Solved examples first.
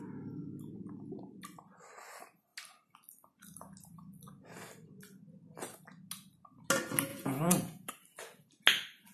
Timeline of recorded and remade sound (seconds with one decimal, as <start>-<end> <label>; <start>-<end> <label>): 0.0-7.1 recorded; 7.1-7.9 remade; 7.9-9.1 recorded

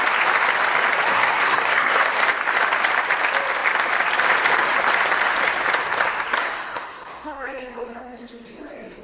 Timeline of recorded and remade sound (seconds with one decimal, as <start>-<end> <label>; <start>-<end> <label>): 0.0-1.1 recorded; 1.1-2.1 remade; 2.1-6.3 recorded; 6.3-9.0 remade

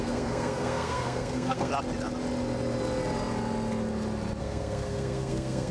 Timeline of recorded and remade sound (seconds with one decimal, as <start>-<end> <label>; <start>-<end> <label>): 0.0-1.7 remade; 1.7-4.4 recorded; 4.4-5.7 remade